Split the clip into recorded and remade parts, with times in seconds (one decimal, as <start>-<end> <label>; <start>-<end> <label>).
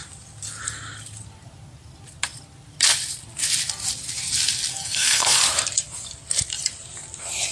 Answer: 0.0-4.7 recorded; 4.7-5.4 remade; 5.4-7.5 recorded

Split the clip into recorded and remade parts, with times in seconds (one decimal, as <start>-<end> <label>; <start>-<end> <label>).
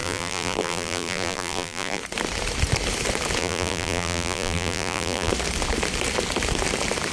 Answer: 0.0-2.0 remade; 2.0-3.4 recorded; 3.4-5.3 remade; 5.3-7.1 recorded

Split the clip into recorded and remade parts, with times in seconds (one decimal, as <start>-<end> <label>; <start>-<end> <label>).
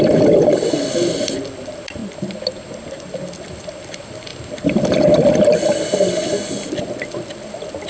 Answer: 0.0-2.0 remade; 2.0-3.5 recorded; 3.5-4.3 remade; 4.3-7.2 recorded; 7.2-7.9 remade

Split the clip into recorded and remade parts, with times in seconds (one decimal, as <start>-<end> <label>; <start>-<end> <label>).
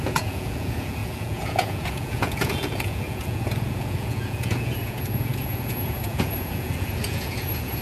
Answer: 0.0-7.8 remade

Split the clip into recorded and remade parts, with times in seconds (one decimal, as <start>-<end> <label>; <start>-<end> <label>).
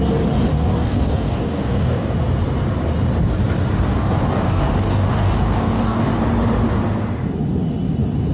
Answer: 0.0-0.5 recorded; 0.5-2.2 remade; 2.2-3.9 recorded; 3.9-6.2 remade; 6.2-8.3 recorded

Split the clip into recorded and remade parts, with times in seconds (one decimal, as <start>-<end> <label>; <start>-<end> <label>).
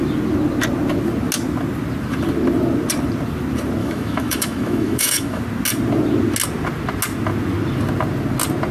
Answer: 0.0-3.8 recorded; 3.8-5.4 remade; 5.4-8.7 recorded